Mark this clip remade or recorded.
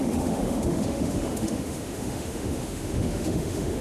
remade